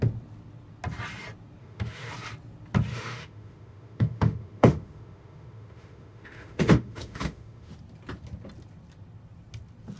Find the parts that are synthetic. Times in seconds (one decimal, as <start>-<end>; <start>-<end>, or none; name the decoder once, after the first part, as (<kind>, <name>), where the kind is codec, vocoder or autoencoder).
1.6-2.1 (autoencoder, DAC-VAE); 2.9-7.7